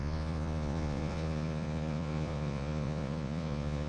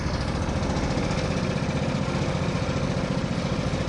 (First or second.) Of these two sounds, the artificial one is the first